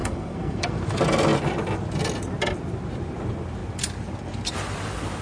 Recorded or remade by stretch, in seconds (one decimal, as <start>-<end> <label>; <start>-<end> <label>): 0.0-0.8 remade; 0.8-5.2 recorded